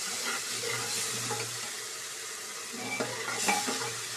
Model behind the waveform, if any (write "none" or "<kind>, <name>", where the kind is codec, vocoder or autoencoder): none